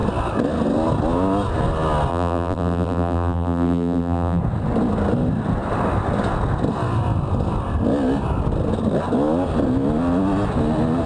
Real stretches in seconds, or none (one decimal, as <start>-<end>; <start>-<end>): 0.0-2.1; 4.4-11.1